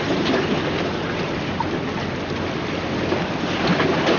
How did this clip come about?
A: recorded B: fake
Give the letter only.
A